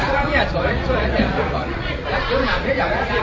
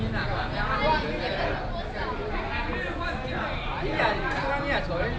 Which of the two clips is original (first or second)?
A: second